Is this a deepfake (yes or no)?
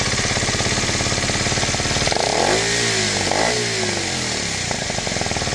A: no